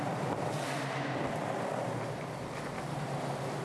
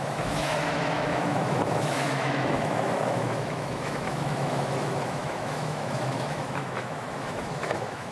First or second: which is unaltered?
first